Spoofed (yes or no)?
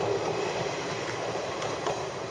yes